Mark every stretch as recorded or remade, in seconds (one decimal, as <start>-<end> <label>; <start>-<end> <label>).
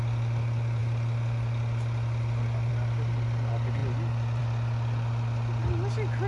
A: 0.0-6.3 recorded